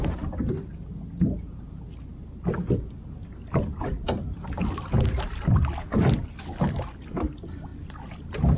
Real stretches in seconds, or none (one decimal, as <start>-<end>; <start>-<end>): 0.0-8.6